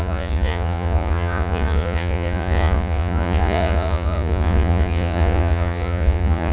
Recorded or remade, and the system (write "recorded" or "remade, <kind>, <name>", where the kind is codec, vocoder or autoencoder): remade, vocoder, Vocos